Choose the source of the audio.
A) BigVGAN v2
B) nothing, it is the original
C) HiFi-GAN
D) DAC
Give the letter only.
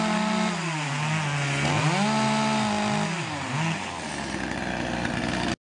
B